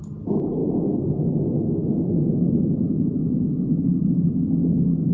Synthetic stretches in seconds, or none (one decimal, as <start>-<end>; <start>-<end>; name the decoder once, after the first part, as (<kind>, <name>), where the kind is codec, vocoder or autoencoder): none